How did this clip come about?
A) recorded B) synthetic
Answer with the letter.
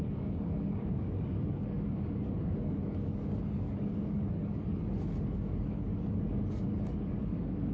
B